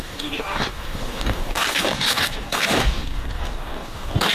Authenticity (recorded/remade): remade